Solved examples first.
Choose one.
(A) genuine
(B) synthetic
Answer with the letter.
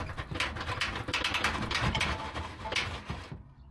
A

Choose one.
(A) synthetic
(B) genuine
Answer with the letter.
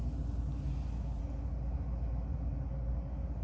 B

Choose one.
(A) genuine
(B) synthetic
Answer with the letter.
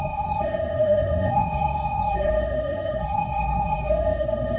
B